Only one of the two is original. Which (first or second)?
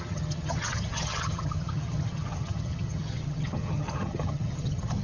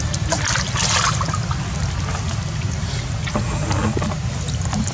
second